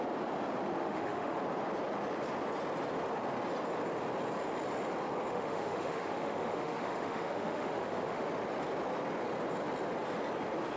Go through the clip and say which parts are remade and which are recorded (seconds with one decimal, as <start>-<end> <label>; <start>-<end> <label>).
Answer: 0.0-0.8 recorded; 0.8-1.4 remade; 1.4-5.3 recorded; 5.3-8.3 remade; 8.3-10.8 recorded